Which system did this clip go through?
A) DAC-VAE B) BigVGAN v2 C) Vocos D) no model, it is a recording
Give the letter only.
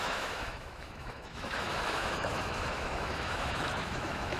A